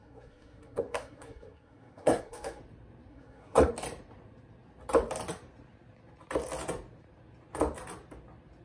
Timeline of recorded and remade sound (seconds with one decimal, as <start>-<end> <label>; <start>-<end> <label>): 0.0-2.6 remade; 2.6-3.1 recorded; 3.1-3.7 remade; 3.7-8.6 recorded